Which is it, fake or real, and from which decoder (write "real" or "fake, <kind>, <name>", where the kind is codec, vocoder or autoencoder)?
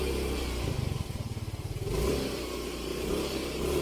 real